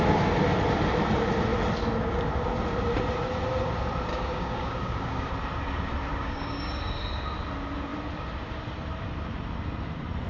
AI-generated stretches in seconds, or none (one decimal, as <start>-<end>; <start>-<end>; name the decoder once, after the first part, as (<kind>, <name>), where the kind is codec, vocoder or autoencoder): 4.1-5.3 (codec, DAC); 6.1-6.7